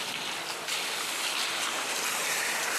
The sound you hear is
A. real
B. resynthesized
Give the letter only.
A